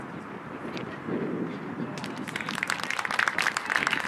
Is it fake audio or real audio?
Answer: real